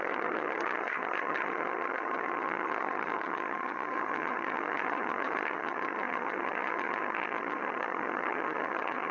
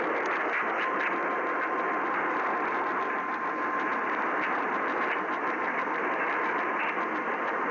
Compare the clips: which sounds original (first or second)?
second